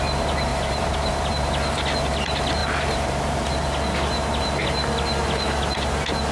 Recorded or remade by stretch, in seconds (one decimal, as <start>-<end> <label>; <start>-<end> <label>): 0.0-0.5 recorded; 0.5-1.3 remade; 1.3-2.6 recorded; 2.6-3.5 remade; 3.5-6.3 recorded